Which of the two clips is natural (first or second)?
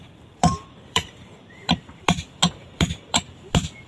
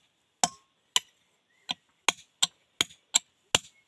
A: second